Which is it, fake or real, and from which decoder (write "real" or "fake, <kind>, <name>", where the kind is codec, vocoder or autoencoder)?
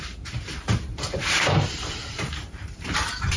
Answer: fake, vocoder, BigVGAN v2